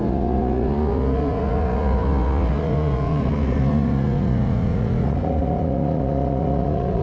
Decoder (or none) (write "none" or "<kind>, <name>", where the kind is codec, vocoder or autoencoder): vocoder, Vocos